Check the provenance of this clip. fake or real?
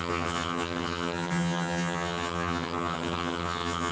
fake